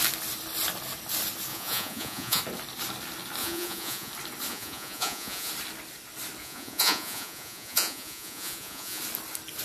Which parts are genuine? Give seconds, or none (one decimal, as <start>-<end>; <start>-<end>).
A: 0.0-1.5; 2.4-3.4; 4.1-4.5; 5.5-6.4; 9.0-9.6